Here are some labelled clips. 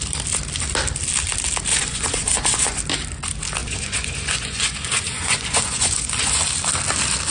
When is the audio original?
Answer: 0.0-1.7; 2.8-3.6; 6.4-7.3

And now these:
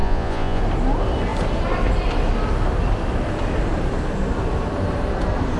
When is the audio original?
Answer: 0.6-5.6

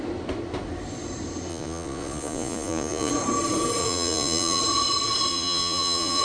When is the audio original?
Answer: 0.0-1.5; 3.1-3.8; 4.6-5.3

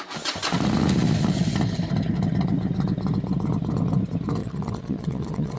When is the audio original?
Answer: 0.0-4.4

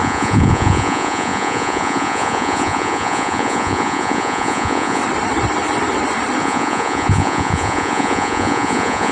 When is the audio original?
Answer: 5.0-6.4

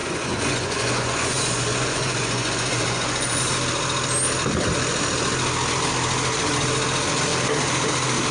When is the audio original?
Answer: 3.4-8.3